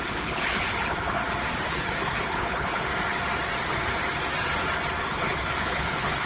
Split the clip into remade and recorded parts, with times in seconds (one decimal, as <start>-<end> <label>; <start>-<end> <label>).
0.0-1.2 remade; 1.2-1.7 recorded; 1.7-2.9 remade; 2.9-5.0 recorded; 5.0-6.3 remade